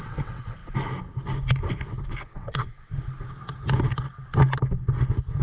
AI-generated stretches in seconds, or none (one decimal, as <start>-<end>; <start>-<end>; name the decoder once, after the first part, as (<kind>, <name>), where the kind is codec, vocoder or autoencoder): 0.0-0.6 (vocoder, WaveNeXt); 2.2-2.9